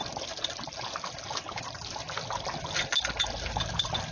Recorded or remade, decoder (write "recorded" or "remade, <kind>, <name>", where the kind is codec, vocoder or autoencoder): recorded